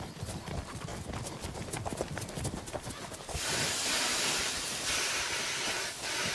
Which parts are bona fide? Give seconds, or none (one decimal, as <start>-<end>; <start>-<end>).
0.0-6.3